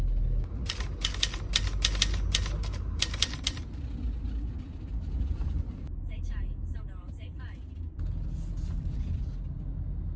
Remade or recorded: recorded